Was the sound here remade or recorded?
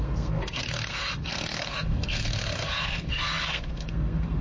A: remade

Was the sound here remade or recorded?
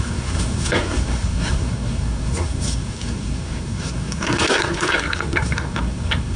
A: remade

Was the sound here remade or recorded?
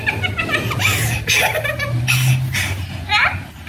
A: recorded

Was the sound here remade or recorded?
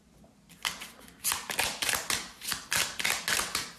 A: recorded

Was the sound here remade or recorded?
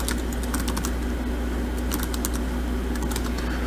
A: recorded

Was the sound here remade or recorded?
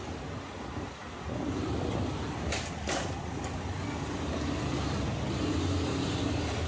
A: recorded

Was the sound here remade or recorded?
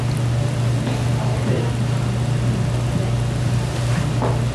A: recorded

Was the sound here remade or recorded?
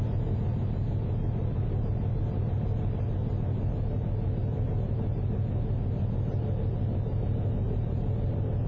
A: recorded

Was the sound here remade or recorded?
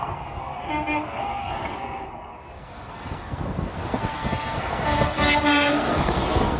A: remade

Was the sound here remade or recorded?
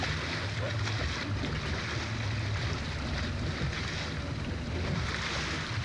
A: recorded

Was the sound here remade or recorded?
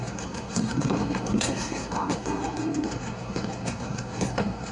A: remade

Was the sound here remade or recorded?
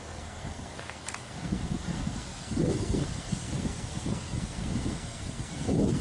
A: remade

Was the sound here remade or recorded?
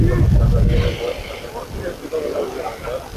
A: recorded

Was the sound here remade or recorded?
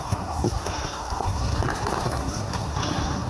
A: remade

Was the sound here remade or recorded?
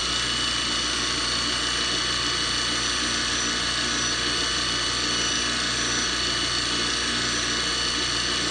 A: recorded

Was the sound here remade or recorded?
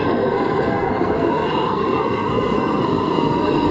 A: remade